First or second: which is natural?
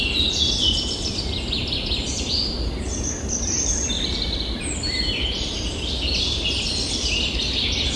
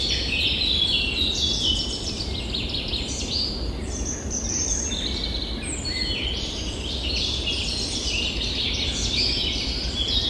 second